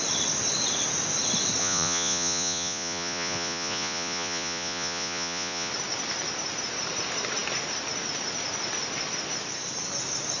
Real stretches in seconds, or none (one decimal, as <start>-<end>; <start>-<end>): 0.0-1.6; 5.7-10.4